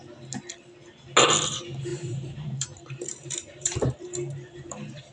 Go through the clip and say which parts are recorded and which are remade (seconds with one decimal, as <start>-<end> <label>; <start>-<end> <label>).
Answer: 0.0-1.9 recorded; 1.9-5.1 remade